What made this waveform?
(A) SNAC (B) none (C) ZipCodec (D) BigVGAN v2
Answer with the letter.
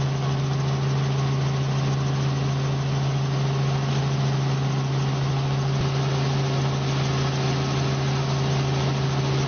B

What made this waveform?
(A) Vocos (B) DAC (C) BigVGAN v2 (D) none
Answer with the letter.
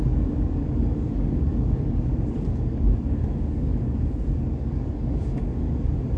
B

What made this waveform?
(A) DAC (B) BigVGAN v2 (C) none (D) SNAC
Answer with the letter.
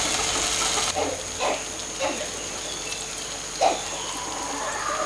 C